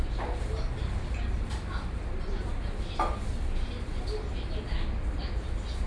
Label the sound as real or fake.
real